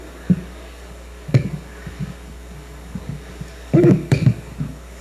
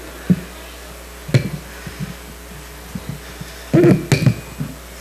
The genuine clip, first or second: second